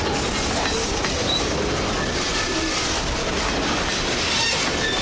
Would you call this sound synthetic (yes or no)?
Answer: no